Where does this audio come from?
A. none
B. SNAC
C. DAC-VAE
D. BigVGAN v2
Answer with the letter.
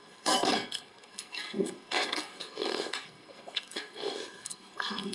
B